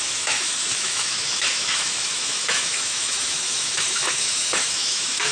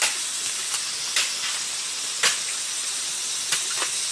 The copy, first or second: first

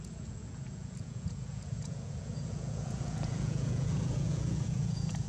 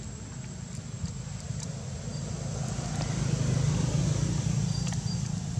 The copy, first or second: first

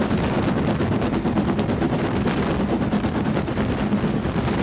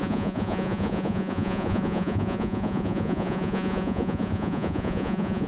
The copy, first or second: second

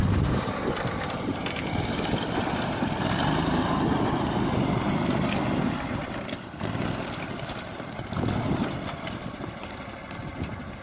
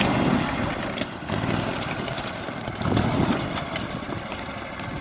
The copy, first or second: first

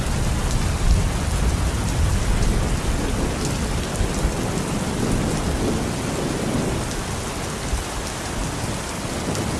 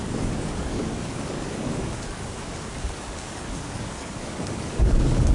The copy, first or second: second